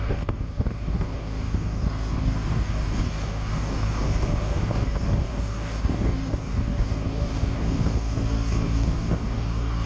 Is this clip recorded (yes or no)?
no